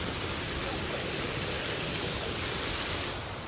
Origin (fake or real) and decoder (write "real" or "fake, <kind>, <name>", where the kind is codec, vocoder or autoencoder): real